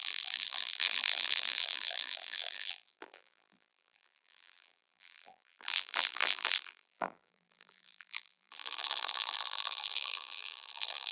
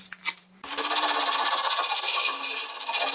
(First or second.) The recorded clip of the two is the second